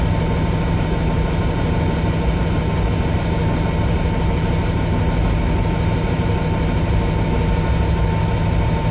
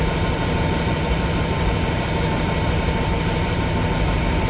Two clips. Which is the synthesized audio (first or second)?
second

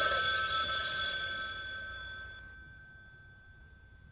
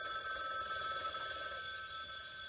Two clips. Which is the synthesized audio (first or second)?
first